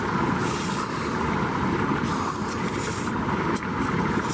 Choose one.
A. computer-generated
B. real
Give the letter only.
B